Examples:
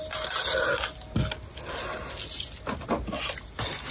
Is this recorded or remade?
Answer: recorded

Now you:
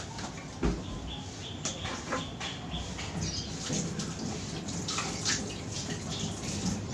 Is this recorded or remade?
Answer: recorded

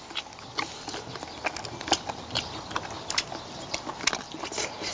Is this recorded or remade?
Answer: recorded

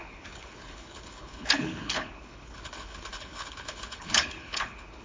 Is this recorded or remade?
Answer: remade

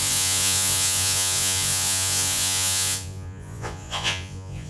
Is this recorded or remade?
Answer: remade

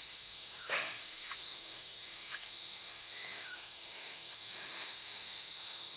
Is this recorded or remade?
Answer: remade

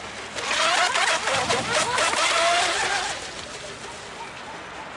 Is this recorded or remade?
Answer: recorded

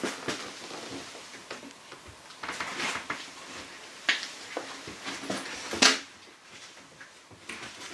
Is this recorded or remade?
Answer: recorded